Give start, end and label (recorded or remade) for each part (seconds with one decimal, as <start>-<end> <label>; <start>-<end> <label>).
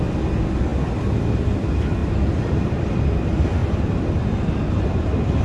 0.0-2.0 recorded; 2.0-3.0 remade; 3.0-3.6 recorded; 3.6-4.3 remade; 4.3-5.4 recorded